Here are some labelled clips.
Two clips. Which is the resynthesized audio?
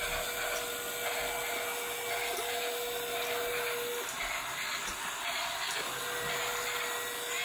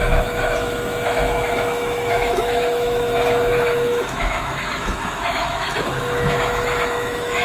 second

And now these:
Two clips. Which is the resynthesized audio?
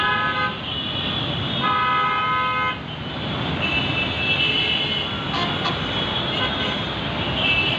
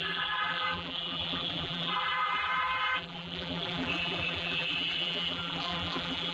second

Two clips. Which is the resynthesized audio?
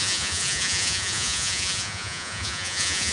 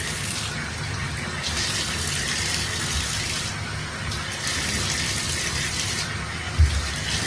first